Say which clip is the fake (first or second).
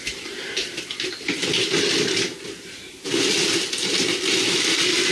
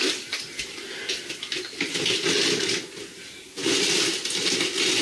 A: first